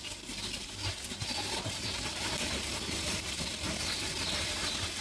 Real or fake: real